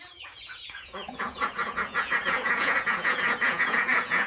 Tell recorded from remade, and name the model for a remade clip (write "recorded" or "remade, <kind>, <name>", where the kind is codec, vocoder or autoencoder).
remade, vocoder, Vocos